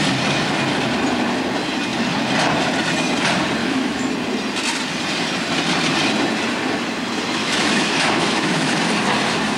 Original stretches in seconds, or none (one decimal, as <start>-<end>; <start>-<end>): 0.0-3.6; 4.1-7.4; 8.7-9.6